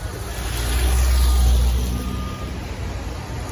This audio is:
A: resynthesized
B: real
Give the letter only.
B